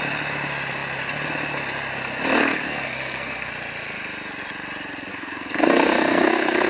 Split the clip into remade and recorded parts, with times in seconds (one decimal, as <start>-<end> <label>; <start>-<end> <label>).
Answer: 0.0-2.4 recorded; 2.4-3.5 remade; 3.5-5.1 recorded; 5.1-6.7 remade